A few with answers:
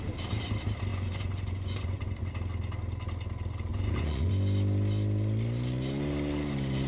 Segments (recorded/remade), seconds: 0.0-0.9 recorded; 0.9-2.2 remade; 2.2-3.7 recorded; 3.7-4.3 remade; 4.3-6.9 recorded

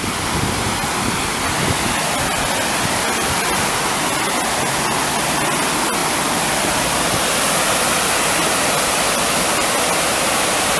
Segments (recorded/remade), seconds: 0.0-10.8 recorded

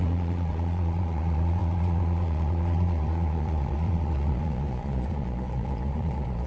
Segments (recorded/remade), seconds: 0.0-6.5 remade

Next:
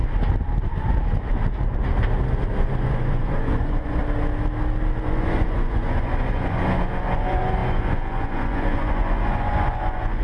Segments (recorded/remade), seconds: 0.0-2.6 recorded; 2.6-4.0 remade; 4.0-5.0 recorded; 5.0-10.2 remade

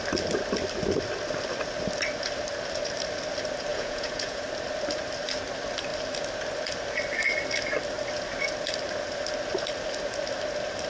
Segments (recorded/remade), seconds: 0.0-3.7 recorded; 3.7-4.4 remade; 4.4-10.9 recorded

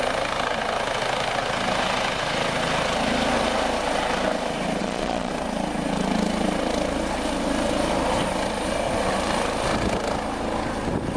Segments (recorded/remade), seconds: 0.0-4.8 recorded; 4.8-5.3 remade; 5.3-11.2 recorded

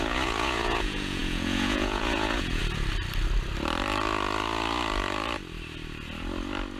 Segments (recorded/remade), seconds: 0.0-2.6 remade; 2.6-6.8 recorded